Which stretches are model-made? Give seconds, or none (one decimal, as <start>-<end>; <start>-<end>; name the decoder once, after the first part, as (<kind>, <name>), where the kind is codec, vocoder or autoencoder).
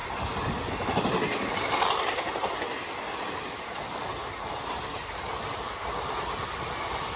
none